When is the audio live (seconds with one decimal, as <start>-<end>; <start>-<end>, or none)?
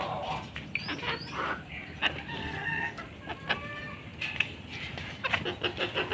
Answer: 0.0-2.4; 3.0-6.1